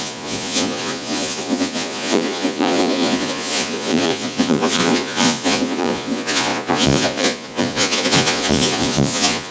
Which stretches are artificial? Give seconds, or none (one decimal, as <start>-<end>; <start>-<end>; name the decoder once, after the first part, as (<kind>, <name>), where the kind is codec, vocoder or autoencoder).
0.0-9.5 (vocoder, Vocos)